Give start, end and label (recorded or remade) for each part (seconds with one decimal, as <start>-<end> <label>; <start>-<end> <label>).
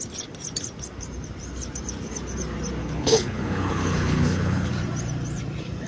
0.0-2.8 recorded; 2.8-4.7 remade; 4.7-5.9 recorded